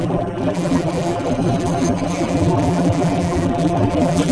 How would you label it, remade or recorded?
remade